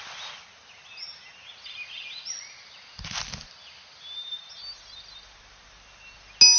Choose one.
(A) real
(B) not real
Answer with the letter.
A